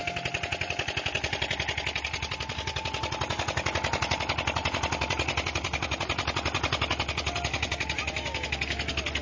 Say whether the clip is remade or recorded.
recorded